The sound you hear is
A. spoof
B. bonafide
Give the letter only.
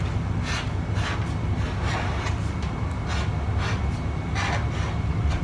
B